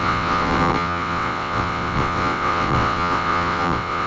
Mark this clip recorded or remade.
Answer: remade